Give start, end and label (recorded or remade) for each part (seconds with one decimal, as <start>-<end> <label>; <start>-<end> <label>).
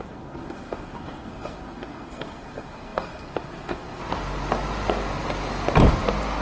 0.0-4.0 remade; 4.0-6.4 recorded